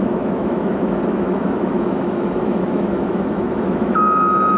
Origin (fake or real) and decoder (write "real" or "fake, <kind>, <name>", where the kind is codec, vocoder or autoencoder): fake, autoencoder, DAC-VAE